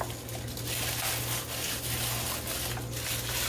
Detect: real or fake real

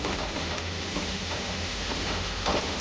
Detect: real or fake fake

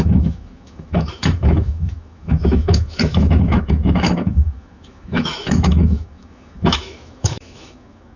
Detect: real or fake fake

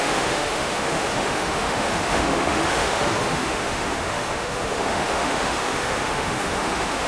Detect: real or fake fake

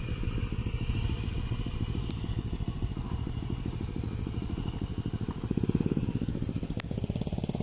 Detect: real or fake real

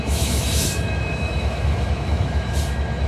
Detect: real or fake fake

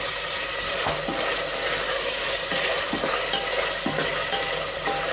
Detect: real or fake real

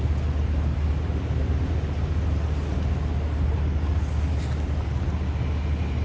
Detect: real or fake real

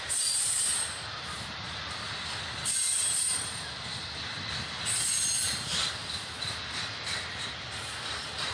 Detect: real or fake real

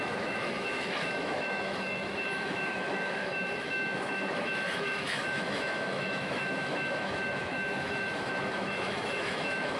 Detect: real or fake fake